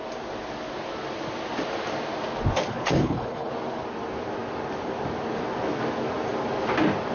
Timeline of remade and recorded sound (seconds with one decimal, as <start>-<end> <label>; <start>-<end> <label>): 0.0-2.7 recorded; 2.7-3.5 remade; 3.5-7.1 recorded